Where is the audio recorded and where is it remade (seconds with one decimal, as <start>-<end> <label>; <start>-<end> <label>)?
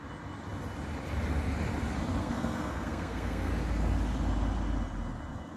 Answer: 0.0-2.2 recorded; 2.2-3.5 remade; 3.5-5.6 recorded